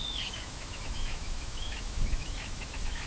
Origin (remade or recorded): remade